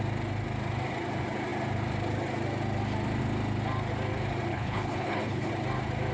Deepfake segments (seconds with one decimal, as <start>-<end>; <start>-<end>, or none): 4.5-5.5